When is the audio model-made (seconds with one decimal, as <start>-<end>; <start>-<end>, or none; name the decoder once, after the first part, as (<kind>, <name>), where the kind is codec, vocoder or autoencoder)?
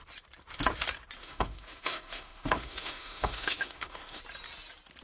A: 1.2-4.2 (autoencoder, DAC-VAE)